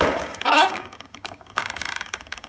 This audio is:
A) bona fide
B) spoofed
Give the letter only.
B